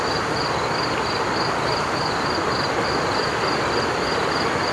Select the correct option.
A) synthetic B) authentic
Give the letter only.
B